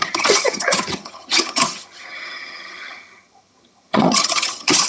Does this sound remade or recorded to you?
remade